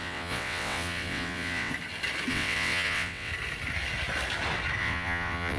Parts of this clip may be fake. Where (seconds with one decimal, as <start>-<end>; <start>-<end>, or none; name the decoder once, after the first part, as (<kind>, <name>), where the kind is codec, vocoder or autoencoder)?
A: 0.0-1.7 (vocoder, WaveNeXt); 2.3-3.3; 4.8-5.6